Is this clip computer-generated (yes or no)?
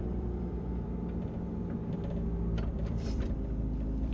yes